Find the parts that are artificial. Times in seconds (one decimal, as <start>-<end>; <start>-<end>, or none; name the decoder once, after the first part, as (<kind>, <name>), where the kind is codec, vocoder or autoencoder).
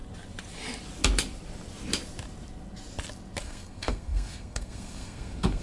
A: 3.4-5.6 (codec, SNAC)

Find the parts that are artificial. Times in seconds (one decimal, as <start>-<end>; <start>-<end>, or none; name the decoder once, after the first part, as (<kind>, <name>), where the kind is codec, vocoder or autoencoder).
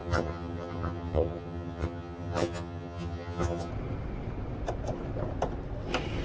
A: 0.0-3.7 (vocoder, HiFi-GAN)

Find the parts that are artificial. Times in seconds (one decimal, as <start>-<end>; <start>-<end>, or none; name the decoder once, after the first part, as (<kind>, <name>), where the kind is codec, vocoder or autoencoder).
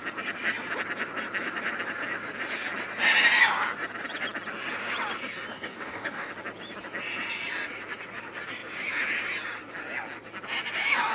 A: 5.5-6.3 (codec, DAC)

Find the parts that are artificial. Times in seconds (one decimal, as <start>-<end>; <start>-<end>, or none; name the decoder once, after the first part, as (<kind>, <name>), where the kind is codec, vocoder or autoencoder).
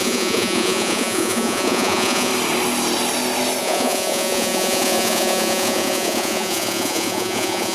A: 0.0-2.3 (vocoder, Vocos); 3.6-7.7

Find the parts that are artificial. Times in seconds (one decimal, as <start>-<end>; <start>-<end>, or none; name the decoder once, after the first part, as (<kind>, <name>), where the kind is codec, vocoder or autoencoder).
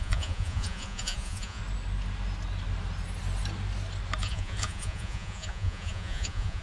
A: 0.0-1.6 (vocoder, Vocos); 4.2-6.6